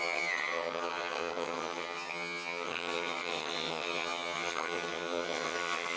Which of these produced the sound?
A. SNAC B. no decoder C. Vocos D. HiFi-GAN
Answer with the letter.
D